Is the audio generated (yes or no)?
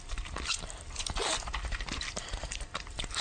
yes